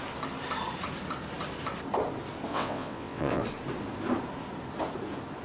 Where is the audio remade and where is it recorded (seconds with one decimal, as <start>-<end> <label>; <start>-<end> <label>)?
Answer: 0.0-2.5 recorded; 2.5-3.4 remade; 3.4-5.4 recorded